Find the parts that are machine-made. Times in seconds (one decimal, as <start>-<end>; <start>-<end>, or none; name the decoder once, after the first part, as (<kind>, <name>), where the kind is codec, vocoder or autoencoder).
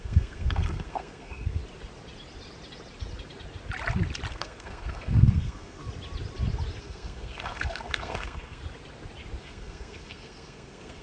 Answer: 0.0-1.6 (codec, SNAC); 4.3-5.8; 6.8-8.6; 9.4-11.0